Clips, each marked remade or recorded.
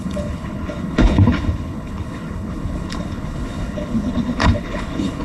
remade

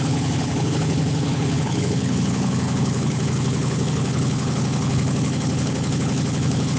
remade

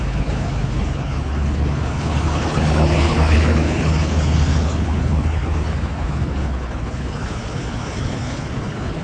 remade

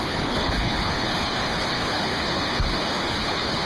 remade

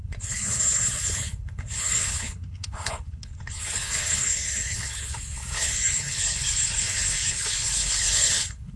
remade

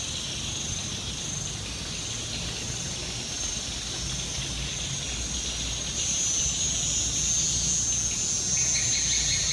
recorded